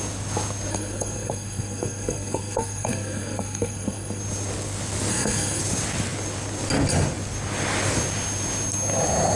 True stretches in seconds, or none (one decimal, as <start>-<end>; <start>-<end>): 0.0-0.7; 4.2-5.1; 5.6-9.4